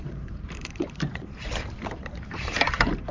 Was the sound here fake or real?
fake